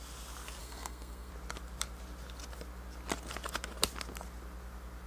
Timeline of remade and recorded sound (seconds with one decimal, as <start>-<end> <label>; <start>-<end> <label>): 0.0-0.6 recorded; 0.6-1.3 remade; 1.3-5.1 recorded